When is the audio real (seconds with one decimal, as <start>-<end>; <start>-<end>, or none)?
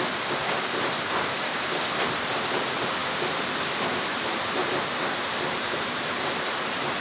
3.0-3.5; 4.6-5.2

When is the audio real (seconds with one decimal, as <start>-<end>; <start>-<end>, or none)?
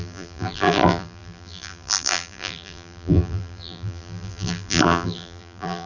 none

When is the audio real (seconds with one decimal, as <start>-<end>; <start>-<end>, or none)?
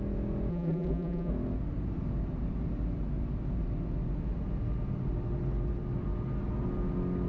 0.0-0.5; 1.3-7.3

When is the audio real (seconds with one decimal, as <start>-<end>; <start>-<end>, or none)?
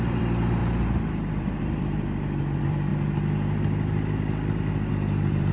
0.6-1.6; 2.9-4.9